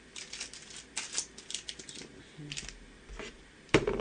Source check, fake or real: real